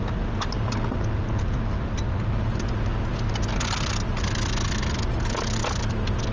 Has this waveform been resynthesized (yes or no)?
no